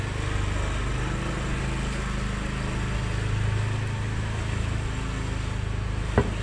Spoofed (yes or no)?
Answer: no